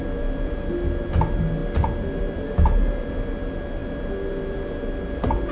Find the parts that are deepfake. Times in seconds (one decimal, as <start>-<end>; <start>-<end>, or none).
none